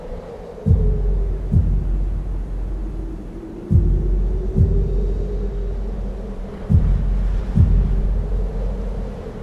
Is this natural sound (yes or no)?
yes